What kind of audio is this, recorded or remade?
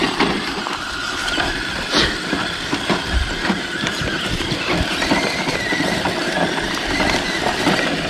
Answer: recorded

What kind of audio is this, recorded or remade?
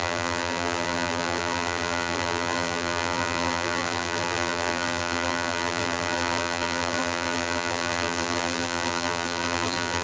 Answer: remade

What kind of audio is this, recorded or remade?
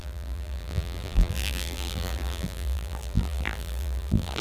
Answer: remade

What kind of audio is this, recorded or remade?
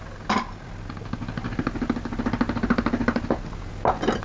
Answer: recorded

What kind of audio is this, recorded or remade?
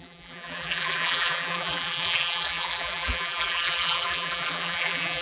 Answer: remade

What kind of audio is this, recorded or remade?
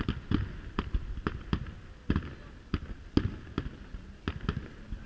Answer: recorded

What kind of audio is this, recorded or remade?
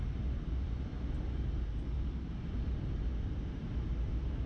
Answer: recorded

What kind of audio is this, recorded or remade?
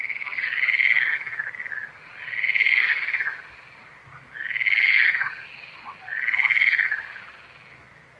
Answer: recorded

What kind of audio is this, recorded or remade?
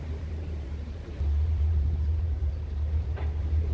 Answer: remade